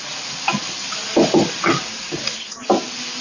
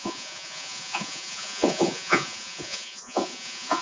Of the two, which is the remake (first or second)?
second